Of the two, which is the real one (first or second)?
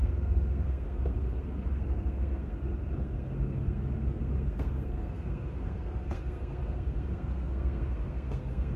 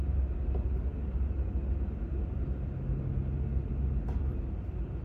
second